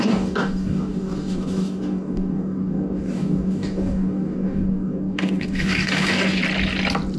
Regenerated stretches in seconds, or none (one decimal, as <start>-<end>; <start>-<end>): 0.0-6.4